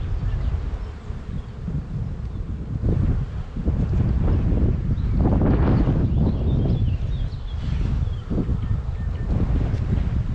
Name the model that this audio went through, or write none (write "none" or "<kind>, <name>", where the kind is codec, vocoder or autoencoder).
none